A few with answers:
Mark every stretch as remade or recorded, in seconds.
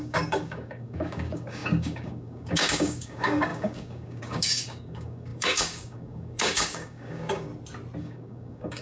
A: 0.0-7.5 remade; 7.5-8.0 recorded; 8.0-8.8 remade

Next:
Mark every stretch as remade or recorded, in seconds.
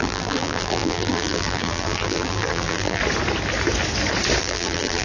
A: 0.0-3.0 remade; 3.0-4.4 recorded; 4.4-5.0 remade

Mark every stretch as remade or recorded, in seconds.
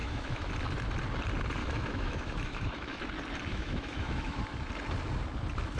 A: 0.0-0.5 remade; 0.5-1.6 recorded; 1.6-3.0 remade; 3.0-3.5 recorded; 3.5-4.4 remade; 4.4-5.8 recorded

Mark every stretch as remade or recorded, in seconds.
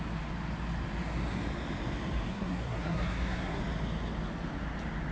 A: 0.0-2.3 recorded; 2.3-3.6 remade; 3.6-5.1 recorded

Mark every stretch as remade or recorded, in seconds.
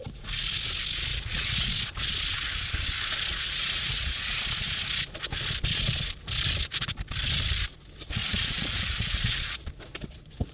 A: 0.0-1.1 recorded; 1.1-1.7 remade; 1.7-3.3 recorded; 3.3-4.2 remade; 4.2-8.2 recorded; 8.2-9.6 remade; 9.6-10.5 recorded